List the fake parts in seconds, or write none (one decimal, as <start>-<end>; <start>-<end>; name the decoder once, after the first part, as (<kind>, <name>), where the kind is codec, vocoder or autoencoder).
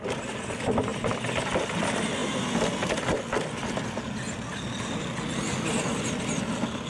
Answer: none